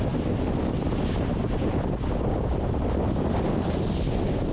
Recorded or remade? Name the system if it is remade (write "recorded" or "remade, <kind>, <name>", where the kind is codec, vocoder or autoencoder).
recorded